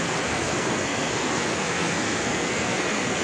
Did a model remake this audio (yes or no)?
yes